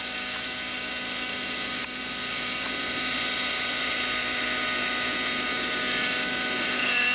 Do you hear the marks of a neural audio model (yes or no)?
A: no